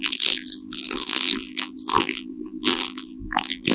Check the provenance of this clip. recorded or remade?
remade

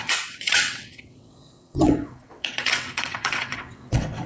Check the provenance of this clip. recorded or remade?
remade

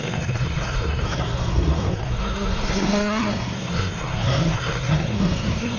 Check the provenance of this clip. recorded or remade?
remade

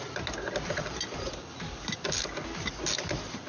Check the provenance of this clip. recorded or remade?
recorded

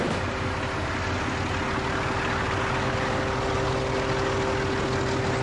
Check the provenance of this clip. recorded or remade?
recorded